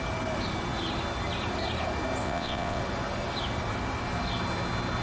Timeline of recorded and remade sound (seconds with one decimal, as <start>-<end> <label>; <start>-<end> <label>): 0.0-2.2 recorded; 2.2-2.8 remade; 2.8-5.0 recorded